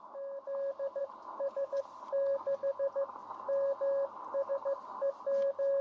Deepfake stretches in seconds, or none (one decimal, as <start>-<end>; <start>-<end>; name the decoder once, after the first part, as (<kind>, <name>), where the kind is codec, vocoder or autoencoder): 1.0-1.8 (vocoder, Vocos)